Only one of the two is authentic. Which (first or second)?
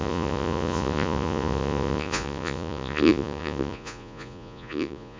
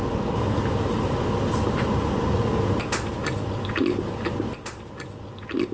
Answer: second